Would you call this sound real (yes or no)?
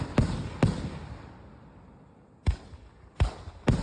yes